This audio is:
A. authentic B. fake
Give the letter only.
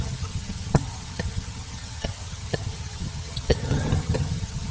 B